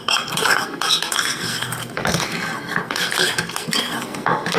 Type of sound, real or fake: fake